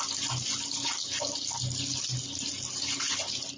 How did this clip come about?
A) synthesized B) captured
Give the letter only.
B